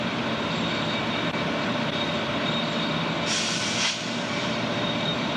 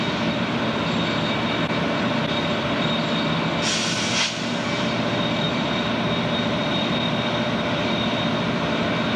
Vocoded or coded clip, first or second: first